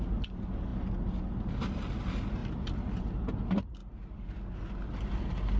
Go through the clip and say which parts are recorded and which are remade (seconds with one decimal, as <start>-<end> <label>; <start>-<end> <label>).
0.0-2.4 recorded; 2.4-3.0 remade; 3.0-3.8 recorded; 3.8-4.4 remade; 4.4-5.6 recorded